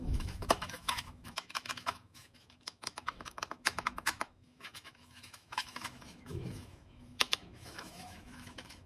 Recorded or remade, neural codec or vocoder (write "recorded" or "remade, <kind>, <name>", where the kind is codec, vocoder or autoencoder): remade, autoencoder, DAC-VAE